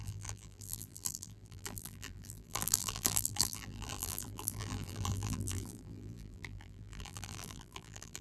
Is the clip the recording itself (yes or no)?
no